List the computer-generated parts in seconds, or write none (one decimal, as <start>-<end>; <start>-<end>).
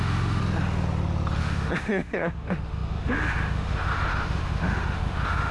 0.0-0.4; 1.4-5.5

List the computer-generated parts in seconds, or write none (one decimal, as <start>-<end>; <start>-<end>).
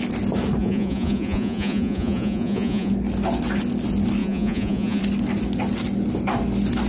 0.6-2.9; 4.2-5.0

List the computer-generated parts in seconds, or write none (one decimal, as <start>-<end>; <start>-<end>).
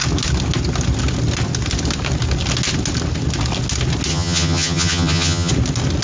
4.1-5.5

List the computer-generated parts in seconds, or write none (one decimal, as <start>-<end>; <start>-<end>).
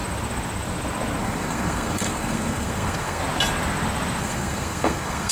1.2-3.2; 4.2-5.3